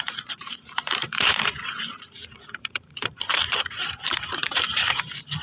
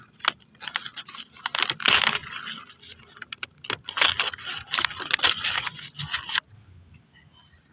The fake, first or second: first